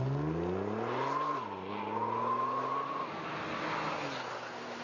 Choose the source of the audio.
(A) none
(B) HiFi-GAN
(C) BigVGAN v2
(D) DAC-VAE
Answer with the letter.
A